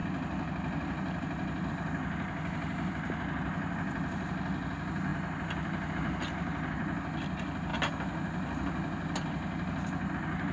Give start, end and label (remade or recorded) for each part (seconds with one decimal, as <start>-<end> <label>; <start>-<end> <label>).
0.0-10.5 recorded